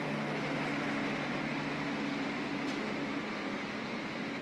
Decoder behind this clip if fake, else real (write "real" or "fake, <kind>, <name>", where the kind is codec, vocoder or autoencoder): real